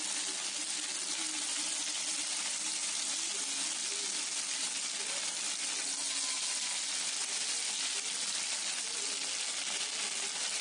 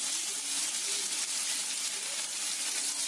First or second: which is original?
first